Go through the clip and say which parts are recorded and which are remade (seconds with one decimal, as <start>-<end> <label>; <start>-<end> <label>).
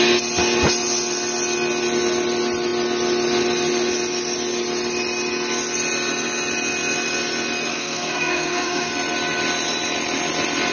0.0-7.7 recorded; 7.7-8.9 remade; 8.9-10.7 recorded